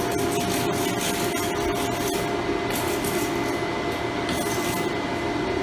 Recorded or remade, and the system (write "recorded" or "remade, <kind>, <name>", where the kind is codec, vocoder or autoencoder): recorded